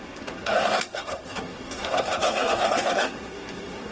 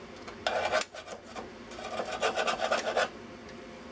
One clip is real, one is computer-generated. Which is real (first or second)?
second